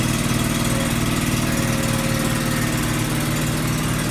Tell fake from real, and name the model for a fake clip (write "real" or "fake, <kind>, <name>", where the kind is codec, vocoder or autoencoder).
real